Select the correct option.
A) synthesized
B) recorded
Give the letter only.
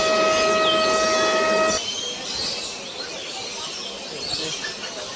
B